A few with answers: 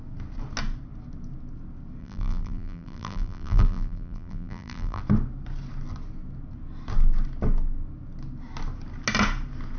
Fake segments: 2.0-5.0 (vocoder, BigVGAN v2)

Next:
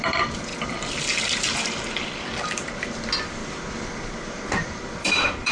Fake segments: 0.0-5.5 (vocoder, BigVGAN v2)

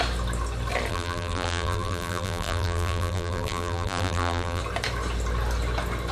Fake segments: 0.9-4.6 (vocoder, BigVGAN v2)